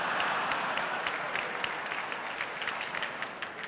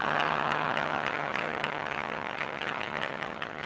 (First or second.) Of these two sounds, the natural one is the first